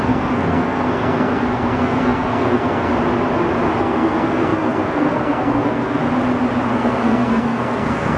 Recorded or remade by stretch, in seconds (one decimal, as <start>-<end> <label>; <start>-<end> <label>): 0.0-2.9 remade; 2.9-3.8 recorded; 3.8-6.0 remade; 6.0-6.7 recorded; 6.7-8.2 remade